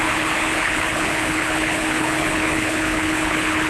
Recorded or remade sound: remade